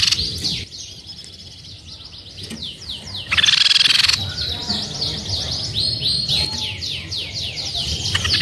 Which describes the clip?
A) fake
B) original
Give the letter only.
B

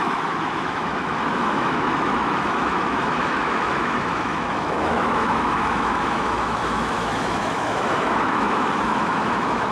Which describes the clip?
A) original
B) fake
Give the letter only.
B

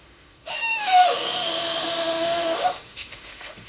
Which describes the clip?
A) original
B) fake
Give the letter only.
B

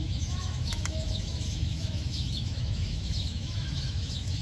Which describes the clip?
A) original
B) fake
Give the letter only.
B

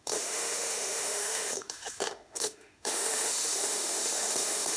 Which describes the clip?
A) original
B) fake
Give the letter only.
B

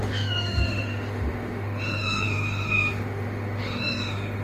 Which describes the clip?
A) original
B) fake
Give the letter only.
B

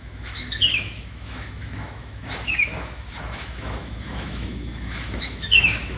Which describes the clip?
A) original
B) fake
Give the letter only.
B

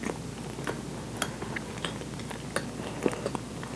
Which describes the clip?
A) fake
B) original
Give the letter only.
B